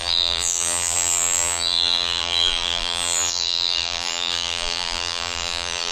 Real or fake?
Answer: fake